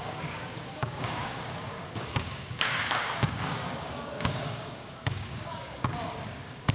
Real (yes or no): no